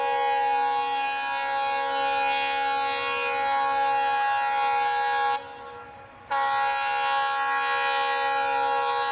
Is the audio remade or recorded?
recorded